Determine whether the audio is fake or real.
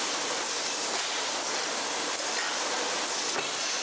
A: real